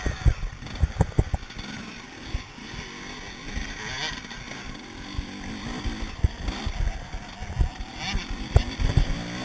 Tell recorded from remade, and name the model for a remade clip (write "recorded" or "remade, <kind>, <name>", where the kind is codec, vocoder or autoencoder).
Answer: recorded